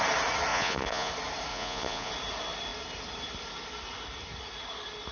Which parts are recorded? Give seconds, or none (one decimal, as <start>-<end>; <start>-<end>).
0.0-0.5; 1.1-1.5; 2.1-5.1